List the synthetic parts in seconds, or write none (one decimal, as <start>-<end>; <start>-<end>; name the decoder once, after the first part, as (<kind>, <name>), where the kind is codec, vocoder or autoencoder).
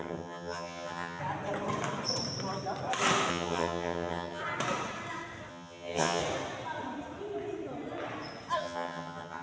0.0-1.2 (vocoder, HiFi-GAN); 3.3-4.4; 5.5-6.2; 8.6-9.4